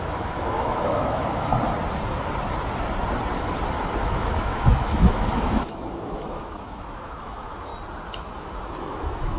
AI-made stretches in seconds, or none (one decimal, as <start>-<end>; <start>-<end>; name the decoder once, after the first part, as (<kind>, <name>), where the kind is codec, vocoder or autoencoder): 0.0-1.5 (autoencoder, DAC-VAE); 4.0-7.7; 8.4-9.4